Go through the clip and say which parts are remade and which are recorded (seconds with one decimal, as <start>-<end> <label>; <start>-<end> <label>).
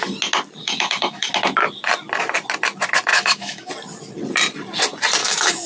0.0-0.6 recorded; 0.6-1.3 remade; 1.3-3.1 recorded; 3.1-3.7 remade; 3.7-5.2 recorded; 5.2-5.7 remade